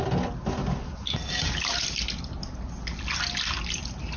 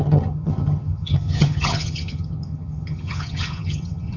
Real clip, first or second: first